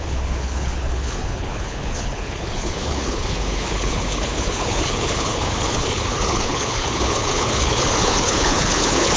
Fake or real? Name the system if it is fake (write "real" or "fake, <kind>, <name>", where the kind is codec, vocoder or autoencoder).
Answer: fake, codec, HILCodec